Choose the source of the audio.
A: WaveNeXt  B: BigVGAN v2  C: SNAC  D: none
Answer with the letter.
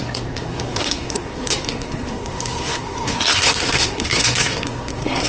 C